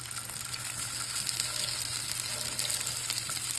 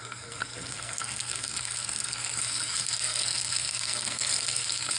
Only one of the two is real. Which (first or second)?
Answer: first